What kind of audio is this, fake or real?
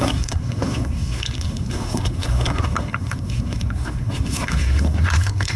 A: fake